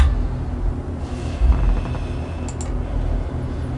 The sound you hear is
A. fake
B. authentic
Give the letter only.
B